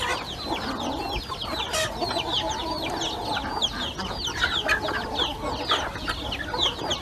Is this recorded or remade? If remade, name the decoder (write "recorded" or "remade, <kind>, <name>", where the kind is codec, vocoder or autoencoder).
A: recorded